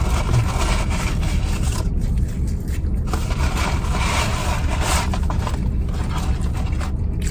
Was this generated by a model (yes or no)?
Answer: no